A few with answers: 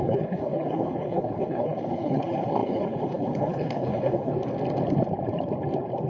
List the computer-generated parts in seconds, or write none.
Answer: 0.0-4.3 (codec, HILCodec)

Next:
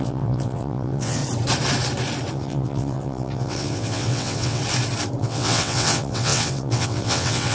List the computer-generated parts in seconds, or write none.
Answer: 0.0-1.2 (vocoder, WaveNeXt); 2.3-4.6; 5.2-7.5

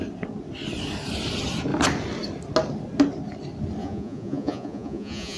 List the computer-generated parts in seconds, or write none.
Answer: 3.8-5.4 (vocoder, Vocos)

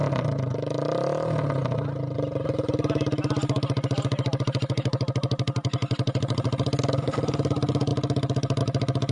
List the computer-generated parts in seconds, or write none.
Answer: none